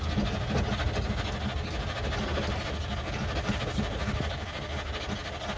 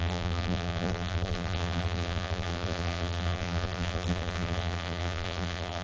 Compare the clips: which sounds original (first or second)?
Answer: first